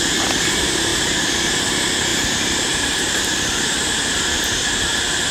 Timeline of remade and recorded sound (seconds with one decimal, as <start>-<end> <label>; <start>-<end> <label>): 0.0-0.9 recorded; 0.9-1.6 remade; 1.6-2.1 recorded; 2.1-4.8 remade; 4.8-5.3 recorded